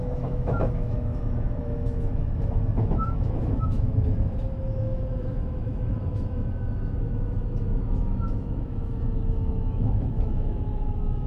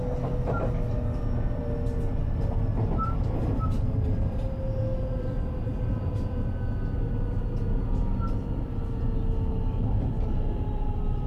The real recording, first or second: second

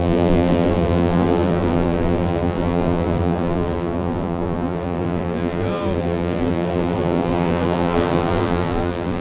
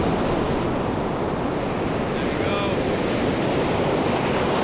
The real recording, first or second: second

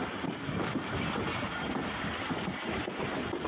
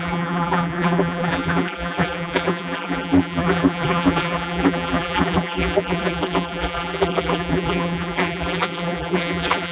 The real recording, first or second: first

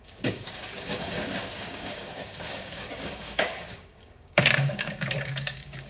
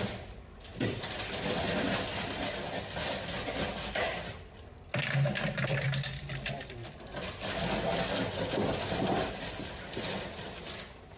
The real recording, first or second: second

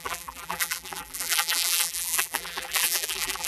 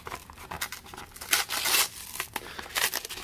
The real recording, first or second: second